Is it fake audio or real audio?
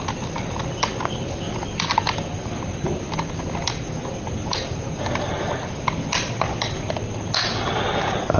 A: real